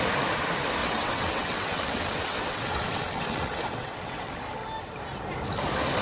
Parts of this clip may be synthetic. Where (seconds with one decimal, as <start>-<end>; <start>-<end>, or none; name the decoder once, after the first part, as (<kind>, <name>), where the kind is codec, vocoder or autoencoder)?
0.8-4.4 (vocoder, WaveNeXt)